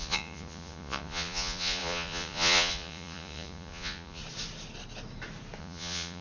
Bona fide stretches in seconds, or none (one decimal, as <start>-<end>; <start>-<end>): 4.2-5.6